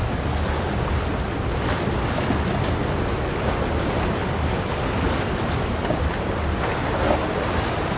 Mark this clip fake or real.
real